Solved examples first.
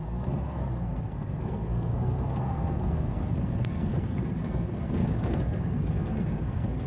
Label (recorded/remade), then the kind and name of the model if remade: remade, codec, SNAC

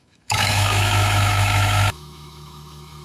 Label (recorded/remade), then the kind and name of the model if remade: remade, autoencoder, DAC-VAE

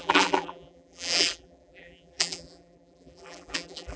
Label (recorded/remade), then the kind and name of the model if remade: remade, vocoder, BigVGAN v2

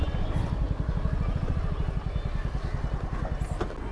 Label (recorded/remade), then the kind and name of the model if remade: recorded